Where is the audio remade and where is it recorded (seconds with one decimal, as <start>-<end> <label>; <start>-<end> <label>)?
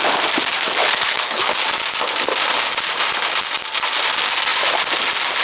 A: 0.0-0.8 recorded; 0.8-1.5 remade; 1.5-5.4 recorded